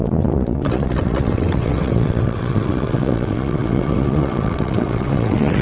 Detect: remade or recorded remade